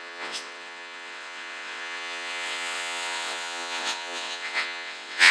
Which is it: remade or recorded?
remade